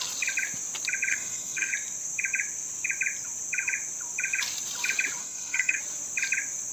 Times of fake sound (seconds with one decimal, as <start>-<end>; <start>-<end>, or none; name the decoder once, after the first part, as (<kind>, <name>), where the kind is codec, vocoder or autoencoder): 1.1-1.7 (codec, SNAC); 5.2-5.8